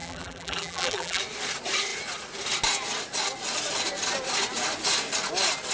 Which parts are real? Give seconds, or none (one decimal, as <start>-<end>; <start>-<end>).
1.2-5.7